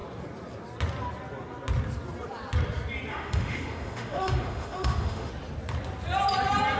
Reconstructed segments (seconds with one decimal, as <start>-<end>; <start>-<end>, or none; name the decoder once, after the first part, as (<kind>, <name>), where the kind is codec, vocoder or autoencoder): 3.1-5.3 (autoencoder, DAC-VAE)